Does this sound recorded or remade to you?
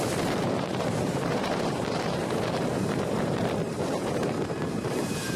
remade